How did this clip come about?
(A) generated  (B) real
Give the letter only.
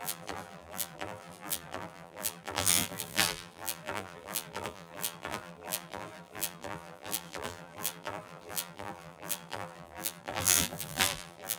A